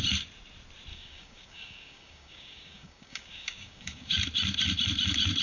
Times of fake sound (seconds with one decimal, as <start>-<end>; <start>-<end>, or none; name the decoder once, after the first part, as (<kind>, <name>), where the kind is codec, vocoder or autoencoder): 0.9-4.1 (codec, DAC)